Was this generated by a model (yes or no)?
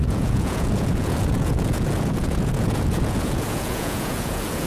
yes